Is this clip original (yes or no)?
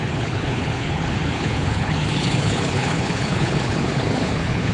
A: no